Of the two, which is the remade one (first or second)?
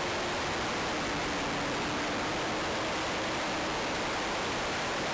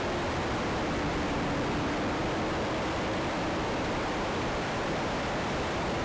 second